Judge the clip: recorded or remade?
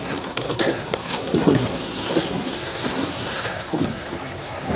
remade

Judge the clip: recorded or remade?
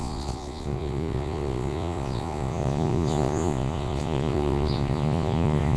remade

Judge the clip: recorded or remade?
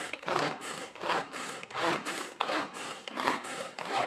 remade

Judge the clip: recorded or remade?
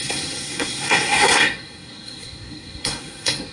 remade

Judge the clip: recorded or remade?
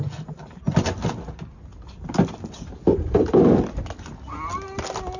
recorded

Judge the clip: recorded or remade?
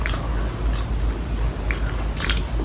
recorded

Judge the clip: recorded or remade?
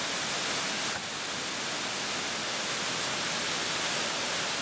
recorded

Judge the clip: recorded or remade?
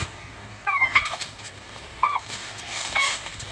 remade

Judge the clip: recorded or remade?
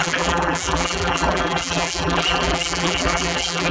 remade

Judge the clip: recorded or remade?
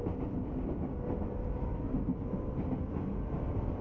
recorded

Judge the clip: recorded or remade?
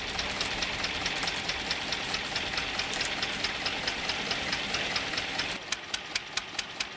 recorded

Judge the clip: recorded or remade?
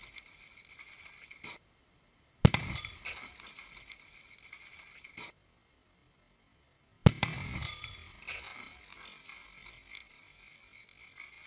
recorded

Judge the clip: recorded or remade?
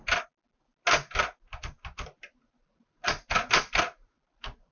recorded